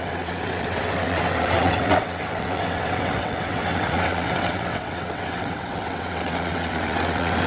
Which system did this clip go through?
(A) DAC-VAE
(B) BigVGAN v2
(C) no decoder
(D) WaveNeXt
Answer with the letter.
D